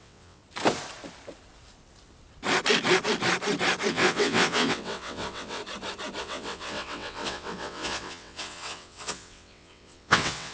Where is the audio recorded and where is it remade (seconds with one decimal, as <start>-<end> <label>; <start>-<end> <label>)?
0.0-0.4 remade; 0.4-3.9 recorded; 3.9-5.6 remade; 5.6-6.2 recorded; 6.2-10.5 remade